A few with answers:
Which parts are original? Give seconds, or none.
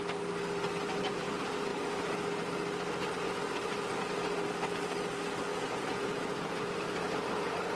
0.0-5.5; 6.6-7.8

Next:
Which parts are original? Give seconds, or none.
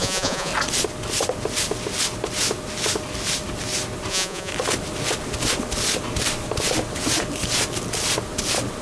0.5-4.1; 4.5-8.8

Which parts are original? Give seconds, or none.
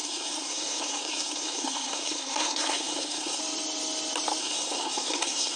3.4-4.4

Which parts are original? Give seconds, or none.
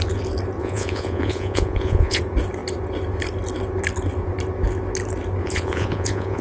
0.0-0.6; 2.2-5.4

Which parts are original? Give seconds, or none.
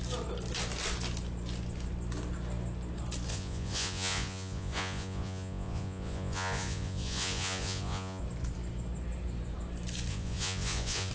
0.0-3.3; 8.2-10.1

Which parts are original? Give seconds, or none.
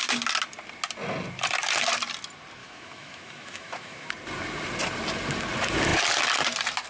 0.0-2.6; 4.1-6.9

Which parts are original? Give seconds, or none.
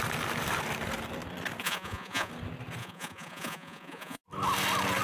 0.0-1.6; 2.3-2.8; 4.2-5.0